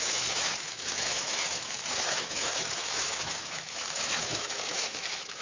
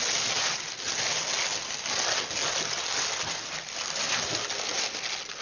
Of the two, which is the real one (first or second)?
second